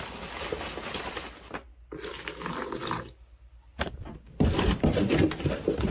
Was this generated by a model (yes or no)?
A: no